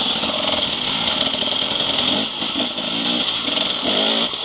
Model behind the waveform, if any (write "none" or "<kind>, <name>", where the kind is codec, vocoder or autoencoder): none